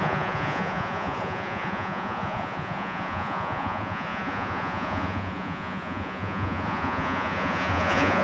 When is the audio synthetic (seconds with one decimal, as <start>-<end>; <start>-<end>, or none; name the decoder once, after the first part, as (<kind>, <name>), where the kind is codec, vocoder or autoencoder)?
0.0-8.2 (vocoder, Vocos)